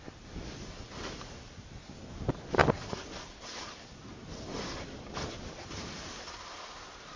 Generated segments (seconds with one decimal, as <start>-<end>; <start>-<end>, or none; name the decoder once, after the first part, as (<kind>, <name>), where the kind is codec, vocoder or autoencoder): none